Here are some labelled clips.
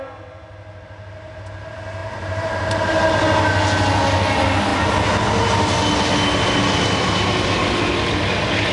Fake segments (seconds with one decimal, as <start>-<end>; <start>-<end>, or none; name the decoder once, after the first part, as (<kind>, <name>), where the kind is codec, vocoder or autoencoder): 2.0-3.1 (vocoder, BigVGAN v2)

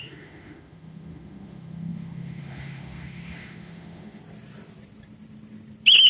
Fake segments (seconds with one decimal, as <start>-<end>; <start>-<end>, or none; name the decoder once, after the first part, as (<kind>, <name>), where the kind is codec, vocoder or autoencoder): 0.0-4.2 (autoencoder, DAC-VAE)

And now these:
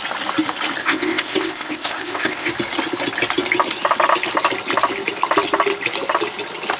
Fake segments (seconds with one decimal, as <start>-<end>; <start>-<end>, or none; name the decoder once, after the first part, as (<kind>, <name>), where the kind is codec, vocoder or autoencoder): 0.8-2.5 (codec, ZipCodec)

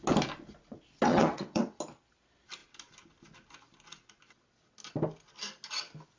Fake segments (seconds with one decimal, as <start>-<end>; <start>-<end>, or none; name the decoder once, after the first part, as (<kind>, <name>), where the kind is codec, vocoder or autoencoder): 1.1-1.8 (vocoder, WaveNeXt)

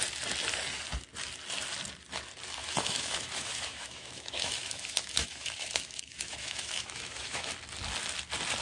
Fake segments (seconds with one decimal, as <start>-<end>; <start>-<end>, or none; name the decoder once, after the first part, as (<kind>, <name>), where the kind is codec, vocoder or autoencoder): 2.6-7.5 (autoencoder, DAC-VAE)